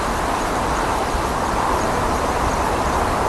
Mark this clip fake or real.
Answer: real